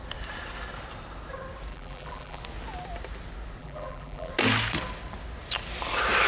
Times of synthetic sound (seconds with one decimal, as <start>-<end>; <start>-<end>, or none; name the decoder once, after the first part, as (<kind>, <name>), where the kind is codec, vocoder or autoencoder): 1.7-2.4 (vocoder, BigVGAN v2); 3.6-4.3